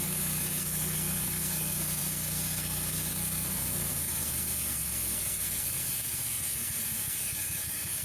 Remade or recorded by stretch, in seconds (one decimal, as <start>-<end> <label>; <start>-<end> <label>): 0.0-8.0 remade